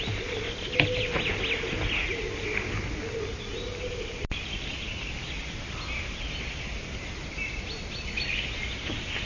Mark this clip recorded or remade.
recorded